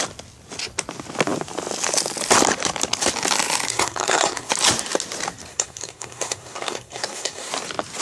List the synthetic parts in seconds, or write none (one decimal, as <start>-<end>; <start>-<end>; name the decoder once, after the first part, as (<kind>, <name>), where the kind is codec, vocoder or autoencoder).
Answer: 3.7-4.5 (codec, SNAC); 5.5-7.5